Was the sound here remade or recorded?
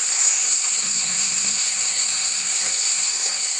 remade